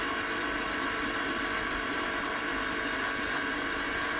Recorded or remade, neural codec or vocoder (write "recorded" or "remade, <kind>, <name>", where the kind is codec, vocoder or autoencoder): recorded